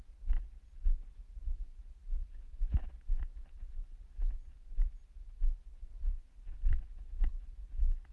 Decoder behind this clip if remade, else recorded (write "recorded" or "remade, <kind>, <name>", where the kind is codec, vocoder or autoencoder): recorded